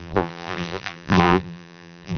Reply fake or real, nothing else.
fake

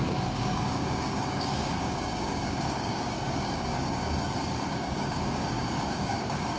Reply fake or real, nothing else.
fake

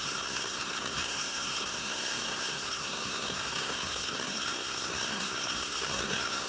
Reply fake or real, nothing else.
fake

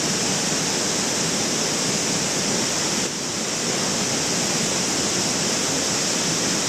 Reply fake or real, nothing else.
real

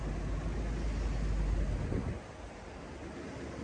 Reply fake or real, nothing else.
real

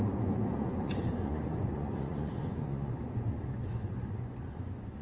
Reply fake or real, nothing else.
fake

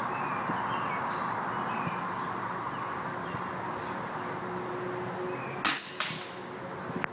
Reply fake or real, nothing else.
real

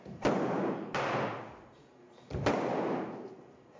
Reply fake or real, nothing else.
real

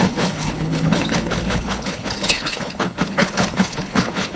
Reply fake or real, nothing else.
fake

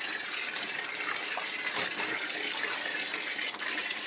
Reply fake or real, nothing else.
fake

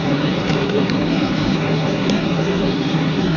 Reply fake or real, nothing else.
fake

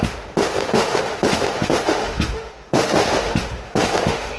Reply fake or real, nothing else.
fake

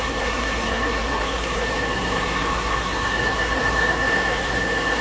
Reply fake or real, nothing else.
fake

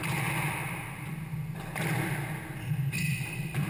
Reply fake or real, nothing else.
real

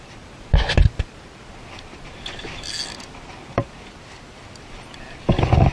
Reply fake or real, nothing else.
real